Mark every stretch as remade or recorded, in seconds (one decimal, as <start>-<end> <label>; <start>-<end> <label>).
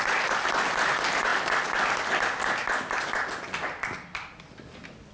0.0-5.1 recorded